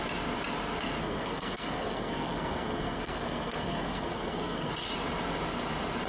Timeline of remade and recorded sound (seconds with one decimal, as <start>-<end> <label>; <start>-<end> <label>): 0.0-1.0 recorded; 1.0-4.7 remade; 4.7-6.1 recorded